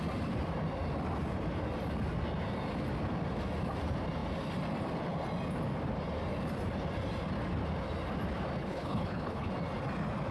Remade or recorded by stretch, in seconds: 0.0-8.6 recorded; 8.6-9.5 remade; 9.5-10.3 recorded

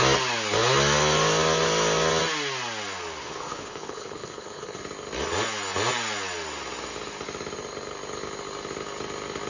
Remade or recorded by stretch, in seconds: 0.0-3.2 recorded; 3.2-4.8 remade; 4.8-9.5 recorded

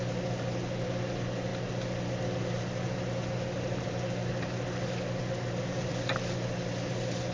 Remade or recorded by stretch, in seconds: 0.0-7.3 recorded

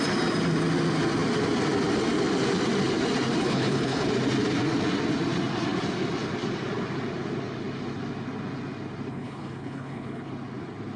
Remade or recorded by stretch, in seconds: 0.0-3.4 recorded; 3.4-4.1 remade; 4.1-9.1 recorded; 9.1-10.3 remade; 10.3-11.0 recorded

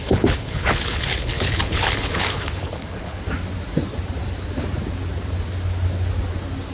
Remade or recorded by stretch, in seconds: 0.0-3.2 remade; 3.2-6.7 recorded

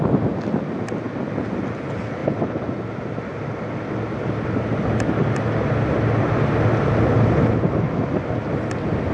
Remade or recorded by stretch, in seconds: 0.0-9.1 recorded

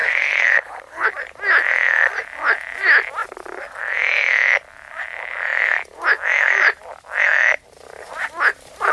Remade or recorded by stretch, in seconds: 0.0-1.1 remade; 1.1-8.9 recorded

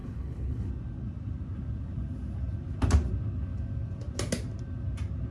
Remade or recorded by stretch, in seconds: 0.0-0.7 remade; 0.7-5.3 recorded